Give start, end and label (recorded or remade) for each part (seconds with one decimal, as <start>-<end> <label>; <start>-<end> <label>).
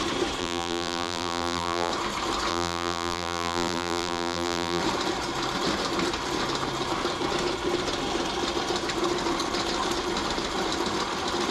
0.0-0.4 recorded; 0.4-1.9 remade; 1.9-2.5 recorded; 2.5-4.8 remade; 4.8-11.5 recorded